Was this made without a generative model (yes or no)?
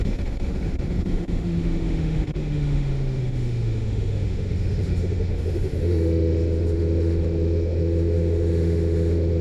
no